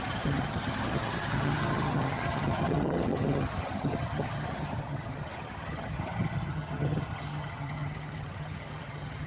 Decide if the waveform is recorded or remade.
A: remade